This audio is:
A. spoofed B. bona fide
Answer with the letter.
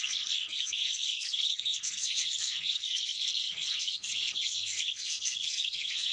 A